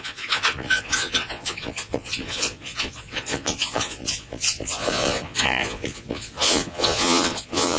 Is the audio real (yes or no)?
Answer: no